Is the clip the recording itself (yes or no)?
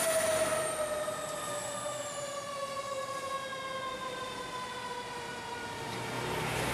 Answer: yes